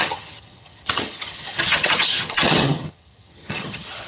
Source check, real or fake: fake